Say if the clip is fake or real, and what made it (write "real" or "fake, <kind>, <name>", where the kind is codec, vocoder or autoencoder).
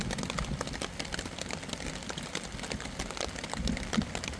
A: real